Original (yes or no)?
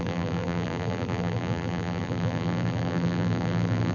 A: no